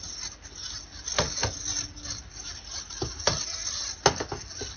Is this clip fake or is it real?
real